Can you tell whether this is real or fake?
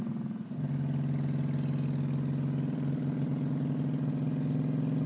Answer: real